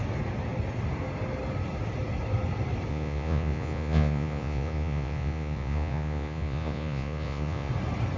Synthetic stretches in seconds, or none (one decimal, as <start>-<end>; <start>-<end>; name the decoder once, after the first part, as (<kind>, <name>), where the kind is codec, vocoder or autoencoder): 2.9-7.7 (vocoder, Vocos)